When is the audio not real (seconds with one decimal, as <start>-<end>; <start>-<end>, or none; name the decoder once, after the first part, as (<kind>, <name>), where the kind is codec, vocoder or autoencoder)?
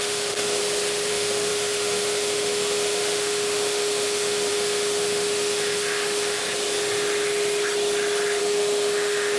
0.0-0.6 (autoencoder, DAC-VAE); 1.1-6.4; 8.4-9.4